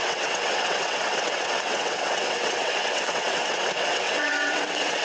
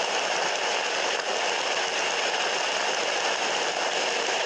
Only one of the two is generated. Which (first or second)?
first